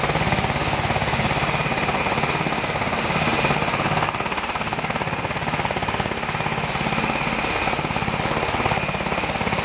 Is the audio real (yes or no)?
yes